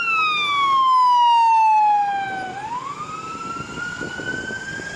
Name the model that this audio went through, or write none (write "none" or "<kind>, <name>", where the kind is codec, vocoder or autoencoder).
none